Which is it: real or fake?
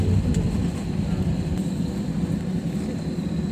fake